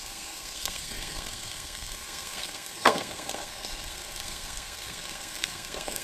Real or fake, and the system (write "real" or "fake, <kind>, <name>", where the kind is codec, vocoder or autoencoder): fake, codec, SNAC